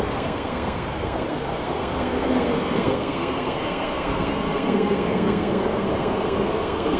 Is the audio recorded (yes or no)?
no